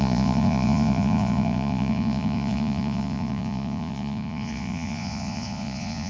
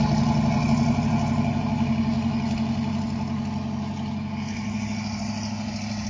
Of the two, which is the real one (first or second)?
second